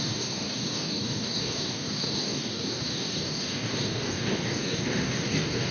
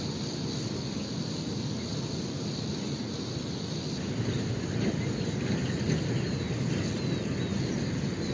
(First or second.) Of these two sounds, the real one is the second